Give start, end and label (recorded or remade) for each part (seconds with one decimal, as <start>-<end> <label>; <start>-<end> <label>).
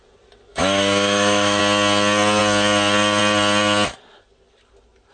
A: 0.0-0.5 recorded; 0.5-1.6 remade; 1.6-5.1 recorded